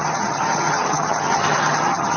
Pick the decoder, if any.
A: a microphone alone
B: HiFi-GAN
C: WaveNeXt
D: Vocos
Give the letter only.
B